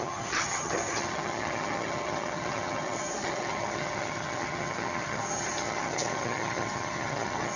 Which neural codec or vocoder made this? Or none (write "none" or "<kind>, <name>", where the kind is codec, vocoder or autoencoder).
vocoder, HiFi-GAN